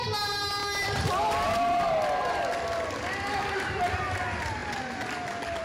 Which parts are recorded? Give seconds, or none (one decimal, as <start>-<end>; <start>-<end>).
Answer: 0.0-5.6